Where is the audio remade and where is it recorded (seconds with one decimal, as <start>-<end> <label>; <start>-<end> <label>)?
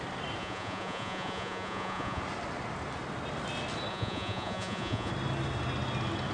0.0-0.4 recorded; 0.4-2.2 remade; 2.2-3.9 recorded; 3.9-5.1 remade; 5.1-6.3 recorded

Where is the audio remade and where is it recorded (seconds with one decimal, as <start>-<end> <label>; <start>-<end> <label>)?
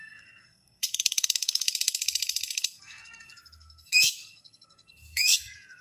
0.0-5.8 remade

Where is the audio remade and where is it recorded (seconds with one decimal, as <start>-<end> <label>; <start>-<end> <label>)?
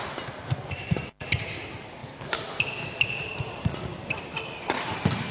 0.0-5.3 recorded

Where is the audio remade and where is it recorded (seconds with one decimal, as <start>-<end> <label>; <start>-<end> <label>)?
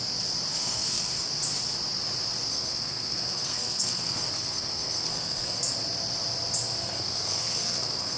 0.0-0.5 recorded; 0.5-1.3 remade; 1.3-2.5 recorded; 2.5-5.7 remade; 5.7-6.8 recorded; 6.8-8.2 remade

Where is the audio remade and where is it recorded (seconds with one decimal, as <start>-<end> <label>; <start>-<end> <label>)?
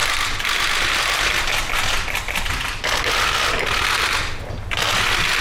0.0-5.4 recorded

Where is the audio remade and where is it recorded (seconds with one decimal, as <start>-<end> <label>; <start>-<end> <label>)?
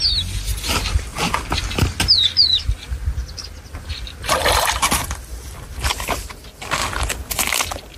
0.0-8.0 recorded